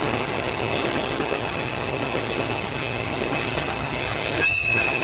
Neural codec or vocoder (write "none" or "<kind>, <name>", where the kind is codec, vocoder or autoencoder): vocoder, HiFi-GAN